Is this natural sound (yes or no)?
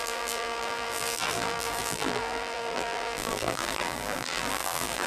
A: no